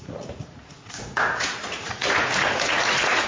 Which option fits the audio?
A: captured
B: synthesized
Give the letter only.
B